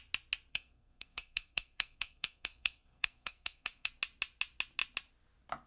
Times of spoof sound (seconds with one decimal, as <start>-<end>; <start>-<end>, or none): 0.5-3.9